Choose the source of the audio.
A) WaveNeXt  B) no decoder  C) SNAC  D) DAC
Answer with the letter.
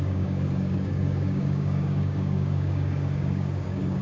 D